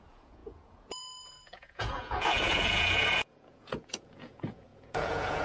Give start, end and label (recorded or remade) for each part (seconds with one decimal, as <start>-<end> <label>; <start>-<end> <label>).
0.0-5.4 remade

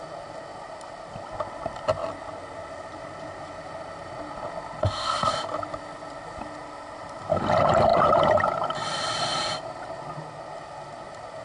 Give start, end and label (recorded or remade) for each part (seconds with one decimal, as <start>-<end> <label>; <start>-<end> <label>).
0.0-4.8 recorded; 4.8-5.3 remade; 5.3-11.4 recorded